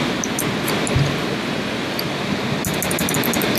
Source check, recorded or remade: recorded